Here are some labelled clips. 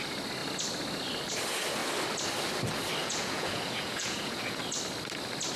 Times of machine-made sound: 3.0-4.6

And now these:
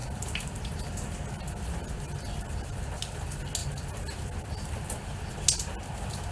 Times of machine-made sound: none

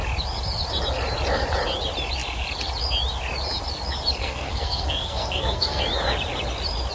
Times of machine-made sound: 4.2-5.8

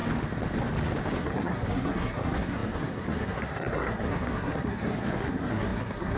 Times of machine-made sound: 1.2-6.2

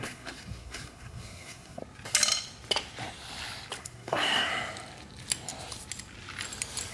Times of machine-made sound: 0.0-1.8; 3.8-4.5

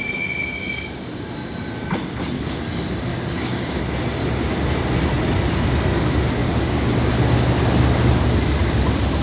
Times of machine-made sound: 3.1-3.8; 6.4-7.2

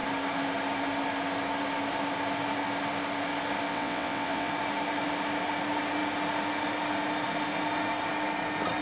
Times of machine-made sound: 3.7-4.5